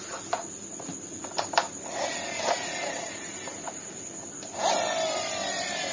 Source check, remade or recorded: recorded